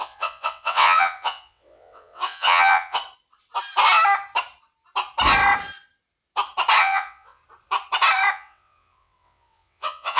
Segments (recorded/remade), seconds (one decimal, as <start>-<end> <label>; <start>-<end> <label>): 0.0-3.0 remade; 3.0-6.8 recorded; 6.8-7.4 remade; 7.4-8.3 recorded; 8.3-10.2 remade